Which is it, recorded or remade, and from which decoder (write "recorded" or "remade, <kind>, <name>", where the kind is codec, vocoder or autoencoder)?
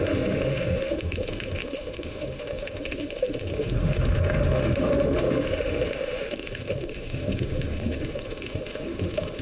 remade, autoencoder, DAC-VAE